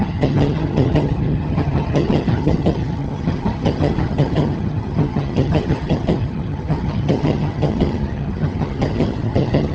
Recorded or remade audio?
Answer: remade